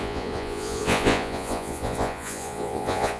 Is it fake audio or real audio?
fake